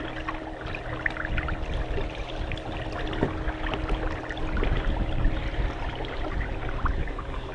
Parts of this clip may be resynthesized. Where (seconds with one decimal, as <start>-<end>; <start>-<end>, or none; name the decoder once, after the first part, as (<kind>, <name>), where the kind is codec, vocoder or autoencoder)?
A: 7.0-7.5 (codec, DAC)